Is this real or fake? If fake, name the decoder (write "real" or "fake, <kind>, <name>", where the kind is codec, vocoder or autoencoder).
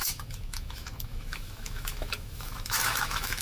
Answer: fake, autoencoder, DAC-VAE